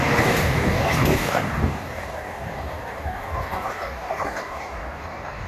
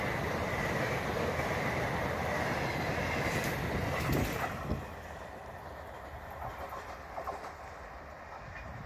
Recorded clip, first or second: second